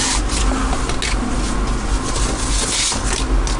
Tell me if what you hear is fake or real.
real